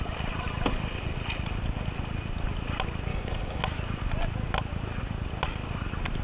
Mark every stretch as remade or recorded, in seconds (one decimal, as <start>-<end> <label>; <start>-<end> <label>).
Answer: 0.0-3.1 recorded; 3.1-3.6 remade; 3.6-6.2 recorded